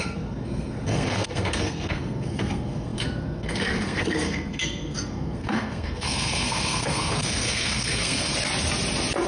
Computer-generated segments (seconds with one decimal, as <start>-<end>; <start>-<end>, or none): 0.0-8.3